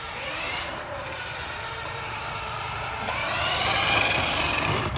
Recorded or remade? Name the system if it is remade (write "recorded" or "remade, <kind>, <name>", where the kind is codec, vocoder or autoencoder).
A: remade, vocoder, BigVGAN v2